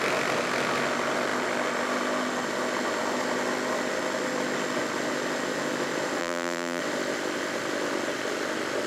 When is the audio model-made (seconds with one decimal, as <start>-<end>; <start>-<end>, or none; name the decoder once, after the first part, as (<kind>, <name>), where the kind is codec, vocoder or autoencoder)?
6.2-6.8 (vocoder, BigVGAN v2)